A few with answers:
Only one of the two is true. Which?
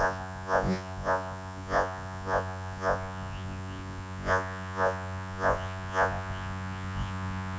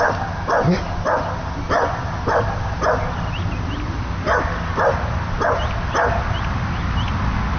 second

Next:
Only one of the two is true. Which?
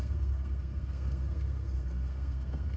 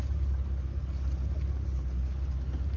second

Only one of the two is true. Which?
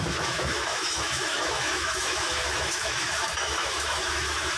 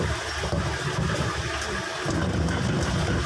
second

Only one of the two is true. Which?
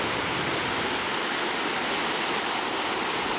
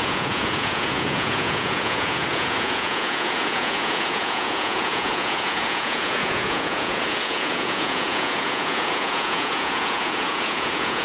first